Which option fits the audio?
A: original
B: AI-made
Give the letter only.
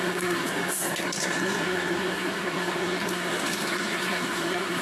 B